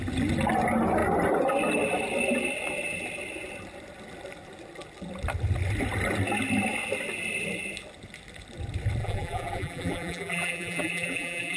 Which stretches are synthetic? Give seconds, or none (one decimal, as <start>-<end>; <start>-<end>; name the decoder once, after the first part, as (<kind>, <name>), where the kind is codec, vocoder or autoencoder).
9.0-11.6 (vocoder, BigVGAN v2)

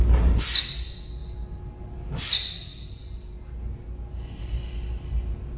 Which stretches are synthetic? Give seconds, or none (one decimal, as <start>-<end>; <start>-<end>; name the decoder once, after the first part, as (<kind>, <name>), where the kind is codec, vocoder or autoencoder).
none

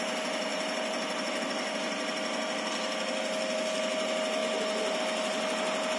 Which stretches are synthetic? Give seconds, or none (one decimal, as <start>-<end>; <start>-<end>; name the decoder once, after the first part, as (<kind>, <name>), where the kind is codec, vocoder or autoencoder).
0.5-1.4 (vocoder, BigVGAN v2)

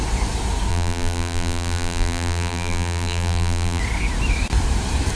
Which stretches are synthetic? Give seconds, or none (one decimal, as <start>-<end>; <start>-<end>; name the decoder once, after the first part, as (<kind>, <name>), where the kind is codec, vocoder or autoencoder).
0.7-3.8 (vocoder, BigVGAN v2)

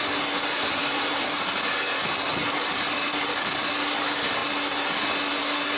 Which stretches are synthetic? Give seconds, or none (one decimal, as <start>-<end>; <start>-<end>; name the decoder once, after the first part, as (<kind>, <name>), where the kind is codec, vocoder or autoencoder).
0.8-1.4 (vocoder, BigVGAN v2); 2.4-3.1